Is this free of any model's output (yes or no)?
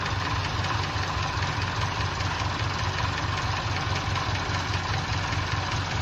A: yes